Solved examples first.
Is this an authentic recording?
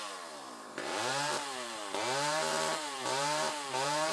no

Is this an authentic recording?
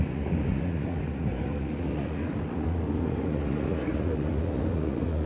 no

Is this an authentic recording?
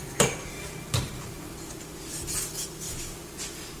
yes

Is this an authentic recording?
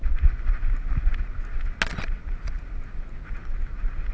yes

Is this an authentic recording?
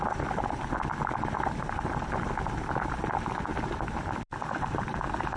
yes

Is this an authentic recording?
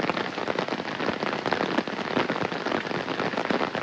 yes